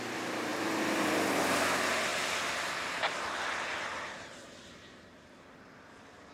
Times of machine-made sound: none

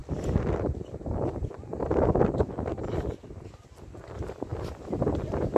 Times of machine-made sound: none

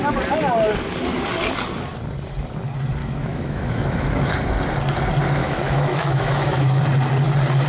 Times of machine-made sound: 3.0-4.3 (autoencoder, DAC-VAE); 5.4-6.8

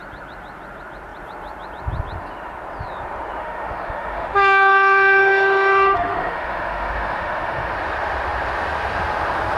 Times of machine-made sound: 3.4-7.7 (autoencoder, DAC-VAE)

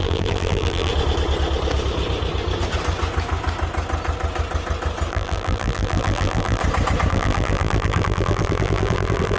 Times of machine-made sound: 0.0-0.9 (vocoder, BigVGAN v2); 5.1-6.6; 7.1-9.4

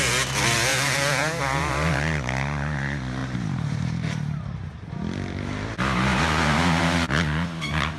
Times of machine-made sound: 0.7-1.4 (vocoder, BigVGAN v2); 3.2-4.5; 6.1-6.8